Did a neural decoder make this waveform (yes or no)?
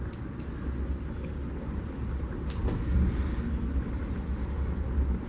no